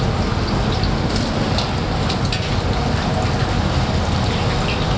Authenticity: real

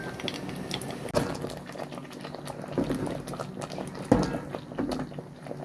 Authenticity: real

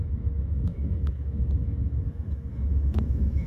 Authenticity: fake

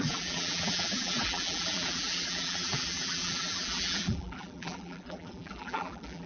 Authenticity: fake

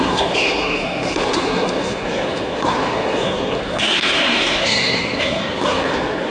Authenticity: fake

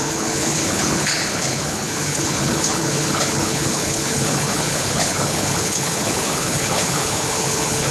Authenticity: fake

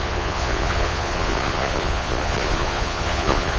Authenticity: fake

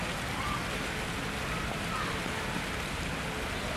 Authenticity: real